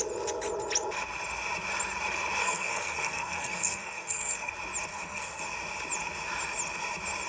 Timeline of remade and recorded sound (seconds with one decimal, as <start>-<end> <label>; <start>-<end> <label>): 0.0-2.4 recorded; 2.4-4.5 remade; 4.5-4.9 recorded; 4.9-5.4 remade; 5.4-7.3 recorded